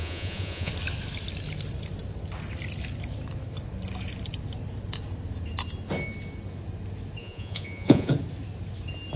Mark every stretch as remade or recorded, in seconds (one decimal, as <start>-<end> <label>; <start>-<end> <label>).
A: 0.0-0.7 remade; 0.7-7.2 recorded; 7.2-8.1 remade; 8.1-9.2 recorded